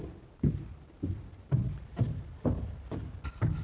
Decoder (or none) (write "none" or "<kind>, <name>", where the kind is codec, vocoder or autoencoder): none